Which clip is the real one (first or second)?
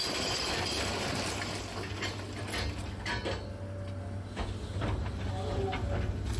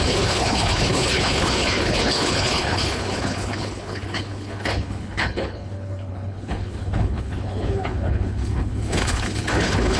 first